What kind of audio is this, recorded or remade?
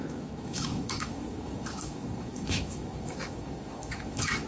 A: remade